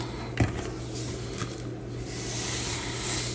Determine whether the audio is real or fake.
real